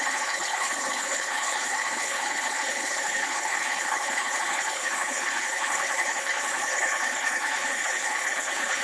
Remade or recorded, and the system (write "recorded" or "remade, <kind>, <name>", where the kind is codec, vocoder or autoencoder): remade, codec, HILCodec